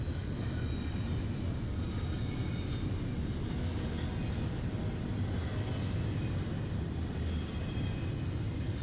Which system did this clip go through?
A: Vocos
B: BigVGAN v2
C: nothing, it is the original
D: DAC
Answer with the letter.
C